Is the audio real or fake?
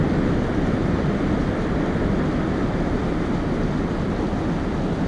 real